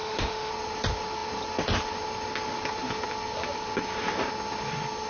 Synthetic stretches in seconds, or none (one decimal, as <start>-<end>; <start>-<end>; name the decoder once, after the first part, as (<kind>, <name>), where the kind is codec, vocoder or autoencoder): 0.0-0.5 (autoencoder, DAC-VAE)